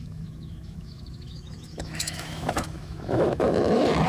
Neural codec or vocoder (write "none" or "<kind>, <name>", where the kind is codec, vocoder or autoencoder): autoencoder, DAC-VAE